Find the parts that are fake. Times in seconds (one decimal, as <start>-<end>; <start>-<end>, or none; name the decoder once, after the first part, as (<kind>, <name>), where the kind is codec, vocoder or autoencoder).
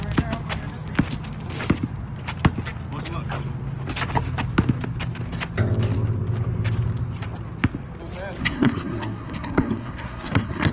8.4-10.7 (codec, SNAC)